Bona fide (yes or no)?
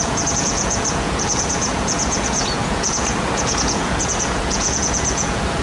no